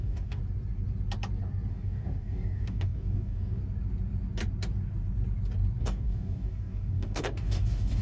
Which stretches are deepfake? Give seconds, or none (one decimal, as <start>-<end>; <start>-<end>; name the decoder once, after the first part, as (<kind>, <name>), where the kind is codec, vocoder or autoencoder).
0.0-0.4 (codec, DAC); 1.7-3.6; 5.8-8.0